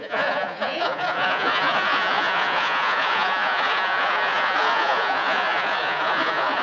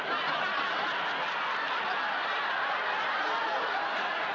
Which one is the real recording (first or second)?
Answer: second